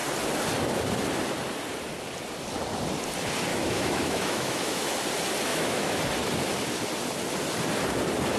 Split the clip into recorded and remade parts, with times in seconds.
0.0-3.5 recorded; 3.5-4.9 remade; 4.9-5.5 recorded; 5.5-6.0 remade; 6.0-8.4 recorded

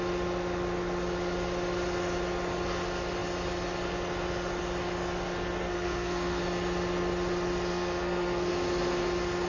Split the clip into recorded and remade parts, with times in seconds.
0.0-5.6 recorded; 5.6-6.4 remade; 6.4-7.7 recorded; 7.7-8.5 remade; 8.5-9.5 recorded

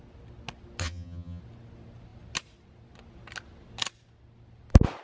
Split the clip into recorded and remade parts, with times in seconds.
0.0-0.8 recorded; 0.8-1.4 remade; 1.4-5.0 recorded

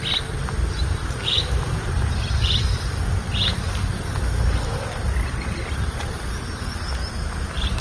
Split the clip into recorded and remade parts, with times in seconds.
0.0-0.8 recorded; 0.8-1.5 remade; 1.5-7.8 recorded

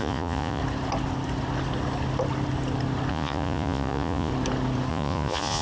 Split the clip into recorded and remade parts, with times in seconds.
0.0-0.6 remade; 0.6-3.1 recorded; 3.1-4.3 remade; 4.3-4.9 recorded; 4.9-5.6 remade